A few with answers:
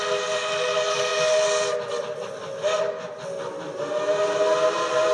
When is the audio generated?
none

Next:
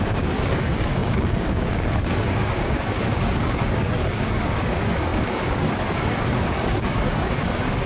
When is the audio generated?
0.0-7.9 (codec, DAC)